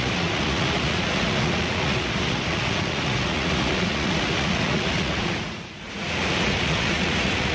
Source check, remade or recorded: remade